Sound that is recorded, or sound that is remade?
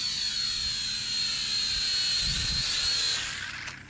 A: recorded